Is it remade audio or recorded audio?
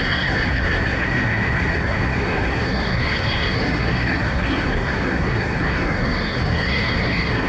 remade